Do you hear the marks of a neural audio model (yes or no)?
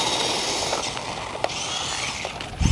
no